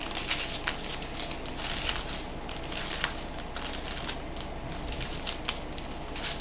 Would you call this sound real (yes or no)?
yes